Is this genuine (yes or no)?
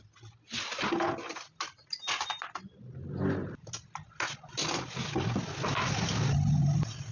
yes